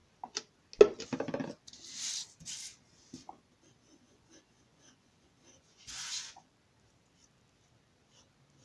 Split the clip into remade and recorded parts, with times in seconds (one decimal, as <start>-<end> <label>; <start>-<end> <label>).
0.0-3.9 recorded; 3.9-6.5 remade; 6.5-8.6 recorded